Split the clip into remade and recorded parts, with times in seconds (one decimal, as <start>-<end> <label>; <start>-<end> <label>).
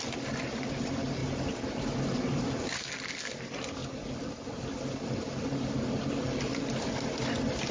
0.0-1.2 recorded; 1.2-2.9 remade; 2.9-3.8 recorded; 3.8-4.6 remade; 4.6-7.7 recorded